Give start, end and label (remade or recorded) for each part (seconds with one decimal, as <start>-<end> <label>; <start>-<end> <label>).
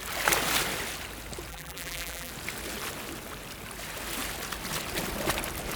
0.0-1.5 recorded; 1.5-2.3 remade; 2.3-5.8 recorded